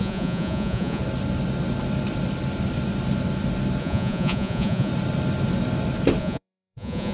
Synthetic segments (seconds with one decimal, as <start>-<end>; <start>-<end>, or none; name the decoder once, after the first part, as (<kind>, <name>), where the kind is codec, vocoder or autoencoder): 0.0-1.0 (vocoder, Vocos); 3.8-4.9; 6.2-7.1

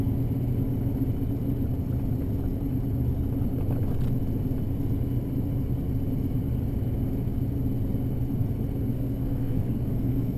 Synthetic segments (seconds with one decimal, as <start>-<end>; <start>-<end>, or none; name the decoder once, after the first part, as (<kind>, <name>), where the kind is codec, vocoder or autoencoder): 8.9-10.4 (codec, SNAC)